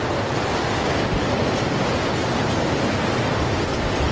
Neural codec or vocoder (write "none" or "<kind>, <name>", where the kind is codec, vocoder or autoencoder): none